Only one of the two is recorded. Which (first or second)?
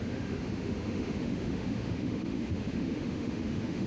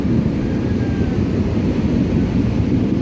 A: second